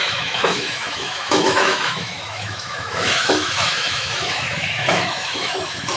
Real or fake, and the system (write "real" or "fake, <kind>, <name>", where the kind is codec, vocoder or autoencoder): fake, autoencoder, DAC-VAE